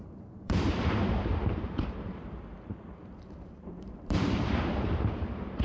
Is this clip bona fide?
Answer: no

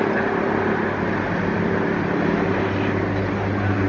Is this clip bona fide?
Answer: yes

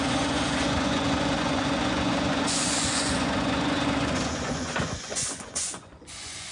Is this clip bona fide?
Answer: no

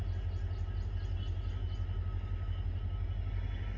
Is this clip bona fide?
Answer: yes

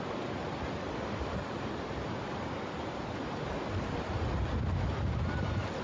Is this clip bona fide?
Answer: no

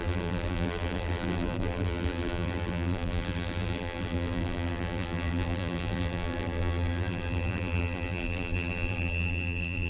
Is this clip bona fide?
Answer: no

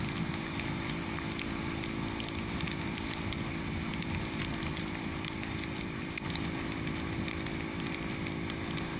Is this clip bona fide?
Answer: yes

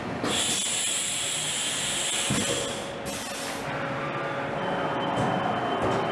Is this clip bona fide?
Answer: yes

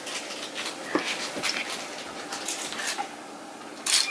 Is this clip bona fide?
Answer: yes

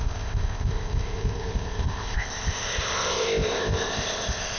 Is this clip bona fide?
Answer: no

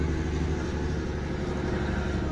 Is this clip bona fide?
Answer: yes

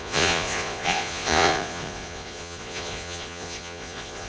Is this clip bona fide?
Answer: no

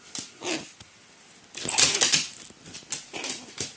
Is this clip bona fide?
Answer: yes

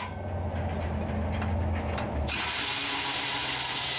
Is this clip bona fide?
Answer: yes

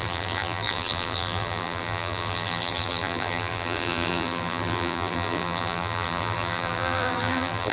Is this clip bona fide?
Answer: no